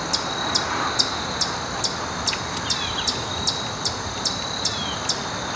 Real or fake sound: real